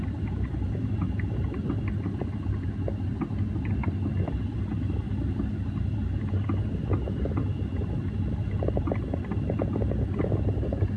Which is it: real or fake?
real